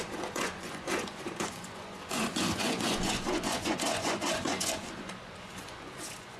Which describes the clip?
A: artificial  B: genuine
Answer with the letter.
A